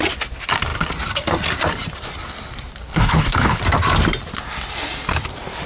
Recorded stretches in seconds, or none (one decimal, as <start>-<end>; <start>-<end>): 0.0-2.9; 3.6-5.7